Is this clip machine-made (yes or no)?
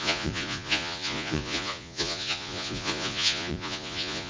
yes